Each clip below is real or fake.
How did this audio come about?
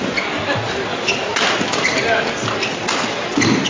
real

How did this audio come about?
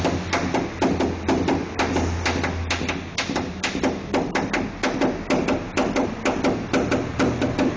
real